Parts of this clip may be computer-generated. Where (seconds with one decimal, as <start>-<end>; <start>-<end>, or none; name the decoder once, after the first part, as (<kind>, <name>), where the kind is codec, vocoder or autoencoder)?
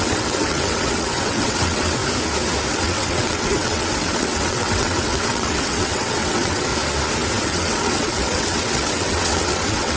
0.0-2.0 (vocoder, WaveNeXt); 2.7-6.7; 7.4-10.0